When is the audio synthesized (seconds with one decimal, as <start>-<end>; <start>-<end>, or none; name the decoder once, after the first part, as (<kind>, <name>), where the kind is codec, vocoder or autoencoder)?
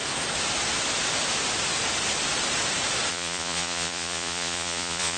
3.1-5.2 (vocoder, Vocos)